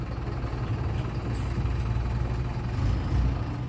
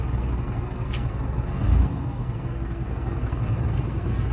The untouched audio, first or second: first